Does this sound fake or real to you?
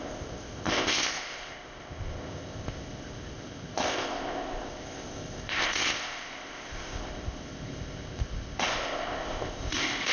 fake